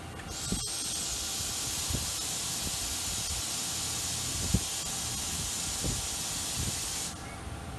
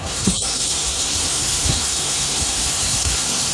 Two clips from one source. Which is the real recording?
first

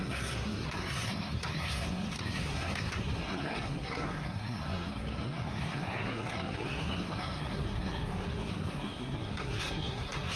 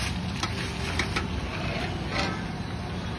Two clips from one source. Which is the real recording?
second